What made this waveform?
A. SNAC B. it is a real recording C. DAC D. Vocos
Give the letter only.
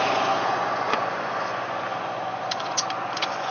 D